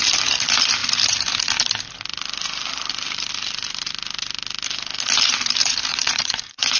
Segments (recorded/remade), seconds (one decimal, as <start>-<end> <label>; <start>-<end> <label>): 0.0-5.9 recorded; 5.9-6.8 remade